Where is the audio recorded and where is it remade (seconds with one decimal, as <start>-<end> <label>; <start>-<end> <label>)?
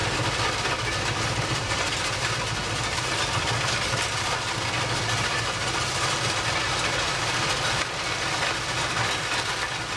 0.0-10.0 recorded